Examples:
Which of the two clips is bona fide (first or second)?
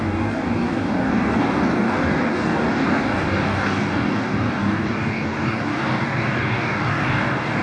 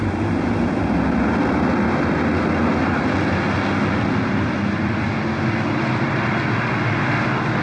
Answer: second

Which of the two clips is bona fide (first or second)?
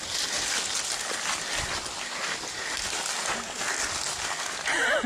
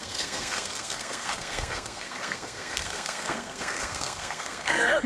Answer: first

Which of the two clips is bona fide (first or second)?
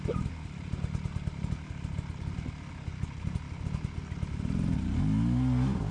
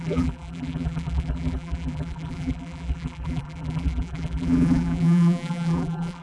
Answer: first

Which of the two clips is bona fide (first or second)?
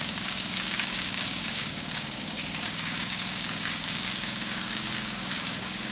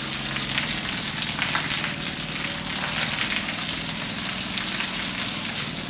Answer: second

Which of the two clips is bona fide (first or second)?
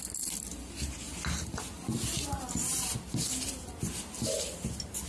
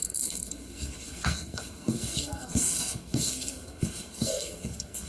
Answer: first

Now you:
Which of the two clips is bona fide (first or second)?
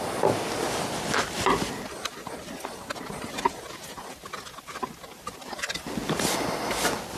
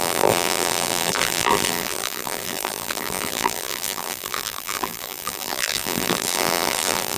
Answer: first